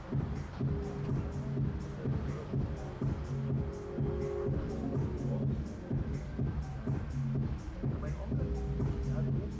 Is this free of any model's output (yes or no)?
yes